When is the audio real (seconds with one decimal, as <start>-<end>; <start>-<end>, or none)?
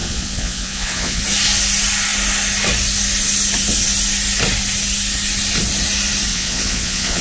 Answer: 1.2-6.3